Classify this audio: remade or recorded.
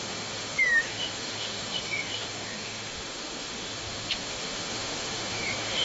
remade